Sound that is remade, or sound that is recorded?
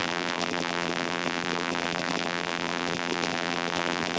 remade